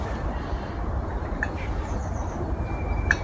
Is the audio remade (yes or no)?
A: yes